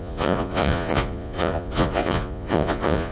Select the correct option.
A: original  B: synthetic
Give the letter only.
B